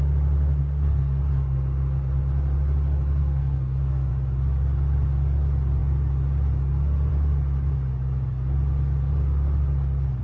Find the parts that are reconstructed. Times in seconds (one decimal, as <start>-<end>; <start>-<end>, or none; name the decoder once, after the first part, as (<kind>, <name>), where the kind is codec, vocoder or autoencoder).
0.6-1.2 (codec, SNAC); 3.2-4.1